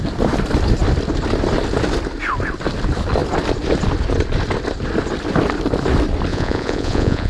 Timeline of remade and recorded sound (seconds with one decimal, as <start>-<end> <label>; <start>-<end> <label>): 0.0-6.3 recorded; 6.3-7.3 remade